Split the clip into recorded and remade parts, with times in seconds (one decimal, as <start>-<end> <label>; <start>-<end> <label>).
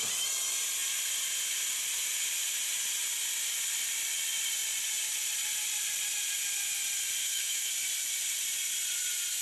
0.0-7.2 recorded; 7.2-7.7 remade; 7.7-9.4 recorded